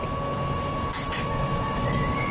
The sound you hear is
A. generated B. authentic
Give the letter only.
B